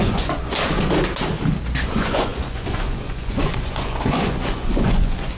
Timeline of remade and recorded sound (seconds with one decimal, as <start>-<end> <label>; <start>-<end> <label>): 0.0-0.4 remade; 0.4-1.8 recorded; 1.8-5.4 remade